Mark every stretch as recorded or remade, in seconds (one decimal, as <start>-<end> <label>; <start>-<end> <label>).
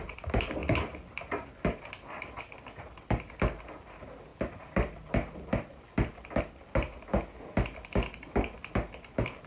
0.0-9.5 recorded